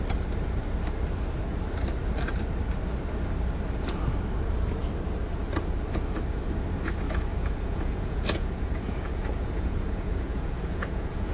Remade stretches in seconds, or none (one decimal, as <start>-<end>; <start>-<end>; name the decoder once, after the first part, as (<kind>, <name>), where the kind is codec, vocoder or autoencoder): 7.3-11.3 (vocoder, Vocos)